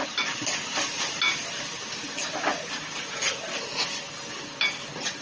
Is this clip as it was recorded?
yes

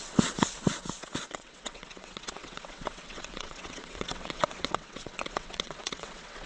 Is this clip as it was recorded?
no